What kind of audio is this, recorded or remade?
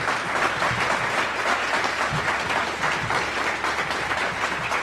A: recorded